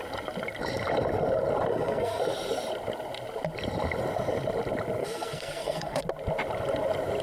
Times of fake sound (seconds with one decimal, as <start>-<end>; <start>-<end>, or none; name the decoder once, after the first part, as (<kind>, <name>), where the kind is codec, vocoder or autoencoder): 1.7-2.2 (codec, SNAC); 5.0-6.0

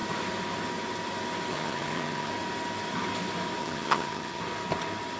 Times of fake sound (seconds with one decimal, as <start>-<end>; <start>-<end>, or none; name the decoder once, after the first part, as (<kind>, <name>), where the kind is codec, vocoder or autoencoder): 1.5-2.3 (vocoder, HiFi-GAN); 3.6-4.4

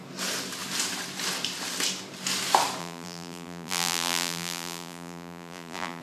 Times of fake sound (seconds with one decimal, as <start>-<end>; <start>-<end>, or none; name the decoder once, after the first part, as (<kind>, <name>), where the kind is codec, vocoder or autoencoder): 2.8-6.0 (vocoder, BigVGAN v2)

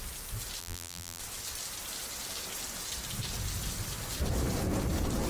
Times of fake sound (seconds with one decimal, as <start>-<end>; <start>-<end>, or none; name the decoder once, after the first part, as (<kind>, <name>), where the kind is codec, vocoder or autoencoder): 0.6-1.2 (vocoder, BigVGAN v2)

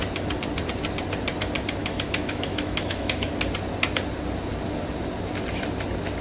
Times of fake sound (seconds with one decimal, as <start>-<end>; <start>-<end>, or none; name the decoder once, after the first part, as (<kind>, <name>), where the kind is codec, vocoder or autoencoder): 1.8-3.3 (autoencoder, DAC-VAE)

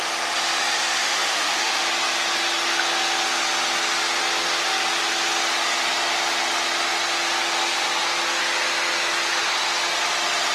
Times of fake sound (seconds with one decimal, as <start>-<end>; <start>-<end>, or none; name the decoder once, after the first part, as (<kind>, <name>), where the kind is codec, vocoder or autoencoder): 1.0-1.8 (autoencoder, DAC-VAE)

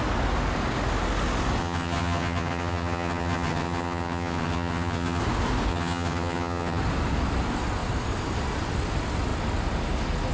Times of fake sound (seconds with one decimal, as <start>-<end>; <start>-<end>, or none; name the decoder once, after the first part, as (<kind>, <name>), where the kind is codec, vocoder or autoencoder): 1.6-5.2 (vocoder, HiFi-GAN); 5.7-6.8